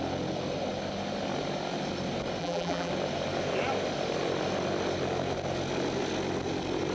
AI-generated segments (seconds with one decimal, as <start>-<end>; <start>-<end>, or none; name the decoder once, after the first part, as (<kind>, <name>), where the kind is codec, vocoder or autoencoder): 2.4-2.9 (vocoder, BigVGAN v2)